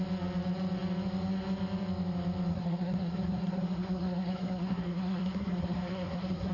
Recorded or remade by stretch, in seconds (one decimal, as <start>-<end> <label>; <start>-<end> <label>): 0.0-2.5 recorded; 2.5-6.5 remade